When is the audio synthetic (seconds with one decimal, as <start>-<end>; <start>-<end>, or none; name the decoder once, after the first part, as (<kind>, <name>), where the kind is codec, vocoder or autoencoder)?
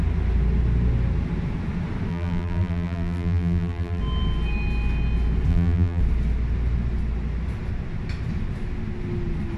2.1-4.0 (vocoder, BigVGAN v2); 5.5-6.0